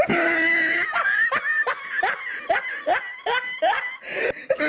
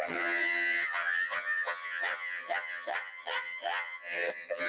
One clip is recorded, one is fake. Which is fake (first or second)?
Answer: second